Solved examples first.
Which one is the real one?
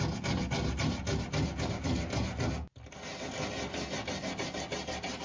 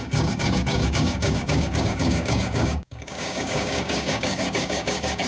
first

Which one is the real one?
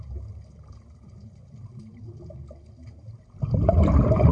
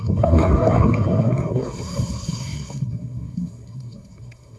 first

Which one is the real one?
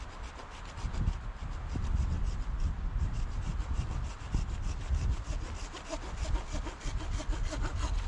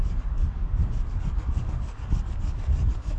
first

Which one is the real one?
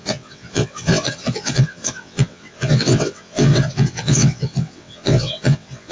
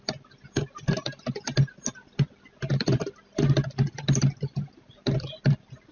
second